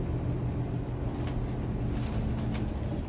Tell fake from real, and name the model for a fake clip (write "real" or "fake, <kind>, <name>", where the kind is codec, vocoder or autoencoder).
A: real